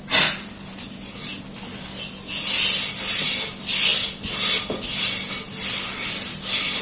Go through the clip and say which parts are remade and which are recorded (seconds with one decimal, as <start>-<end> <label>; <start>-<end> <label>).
0.0-6.8 recorded